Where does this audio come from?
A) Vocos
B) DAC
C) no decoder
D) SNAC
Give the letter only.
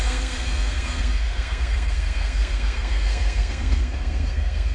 D